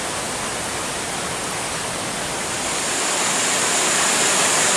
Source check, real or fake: real